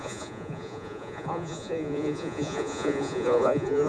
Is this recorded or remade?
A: remade